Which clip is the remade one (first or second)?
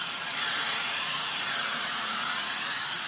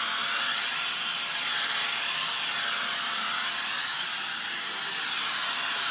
first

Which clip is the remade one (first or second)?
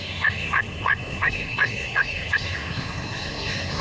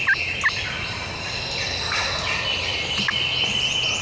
first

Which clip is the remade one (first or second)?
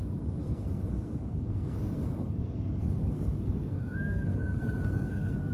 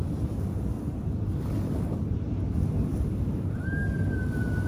first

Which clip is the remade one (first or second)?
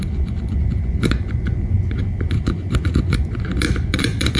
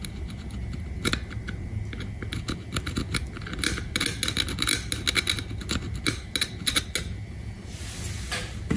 first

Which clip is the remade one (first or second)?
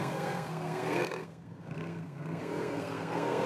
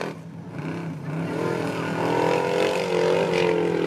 first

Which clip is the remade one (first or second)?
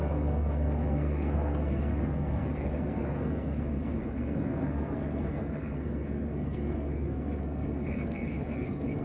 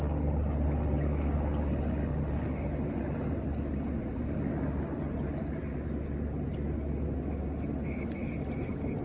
first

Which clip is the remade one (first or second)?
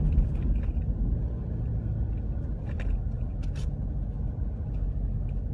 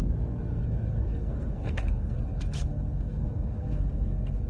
second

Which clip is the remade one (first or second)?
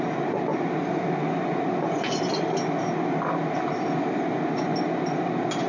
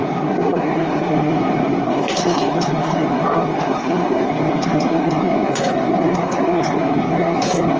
second